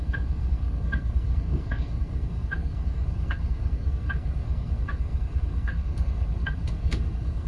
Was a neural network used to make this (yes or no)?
yes